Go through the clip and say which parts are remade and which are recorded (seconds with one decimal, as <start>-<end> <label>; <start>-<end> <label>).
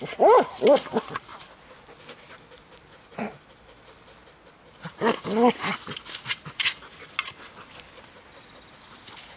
0.0-9.4 recorded